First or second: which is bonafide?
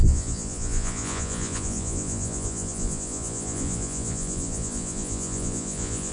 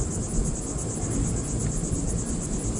second